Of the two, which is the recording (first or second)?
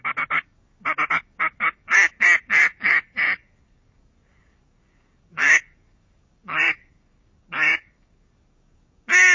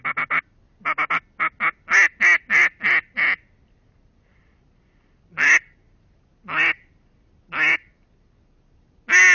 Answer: second